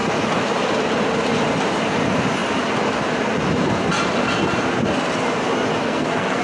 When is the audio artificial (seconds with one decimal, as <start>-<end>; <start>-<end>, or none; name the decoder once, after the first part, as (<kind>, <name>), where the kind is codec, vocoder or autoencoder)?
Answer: 5.8-6.4 (codec, SNAC)